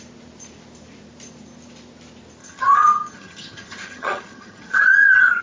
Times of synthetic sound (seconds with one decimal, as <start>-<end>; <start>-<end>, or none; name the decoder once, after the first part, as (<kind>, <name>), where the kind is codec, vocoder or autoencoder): 2.4-5.4 (vocoder, HiFi-GAN)